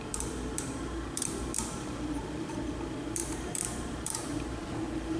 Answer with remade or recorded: remade